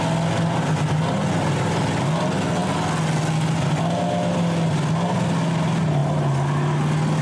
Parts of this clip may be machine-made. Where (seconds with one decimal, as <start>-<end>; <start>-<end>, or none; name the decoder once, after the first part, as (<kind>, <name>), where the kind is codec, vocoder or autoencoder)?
none